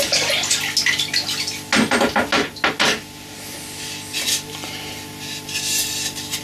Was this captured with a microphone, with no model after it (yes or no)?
yes